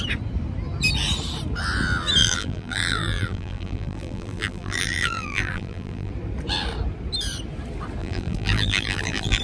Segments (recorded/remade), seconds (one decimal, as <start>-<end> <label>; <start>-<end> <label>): 0.0-2.2 recorded; 2.2-6.1 remade; 6.1-8.0 recorded; 8.0-9.4 remade